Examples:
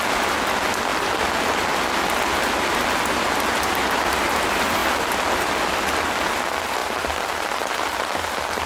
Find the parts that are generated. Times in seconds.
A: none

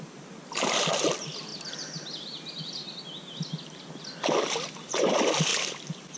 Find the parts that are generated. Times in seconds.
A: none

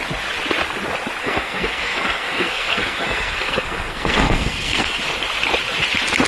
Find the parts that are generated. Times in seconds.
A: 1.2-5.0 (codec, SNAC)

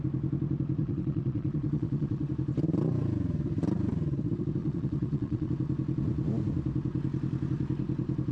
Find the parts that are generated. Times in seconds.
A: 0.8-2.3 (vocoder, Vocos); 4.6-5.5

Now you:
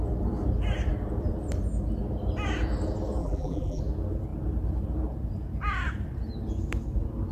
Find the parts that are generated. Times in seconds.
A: 3.2-3.8 (vocoder, BigVGAN v2)